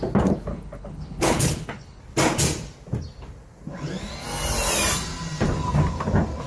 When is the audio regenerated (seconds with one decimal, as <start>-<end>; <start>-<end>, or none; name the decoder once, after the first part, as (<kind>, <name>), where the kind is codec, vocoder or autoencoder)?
0.5-2.0 (codec, HILCodec)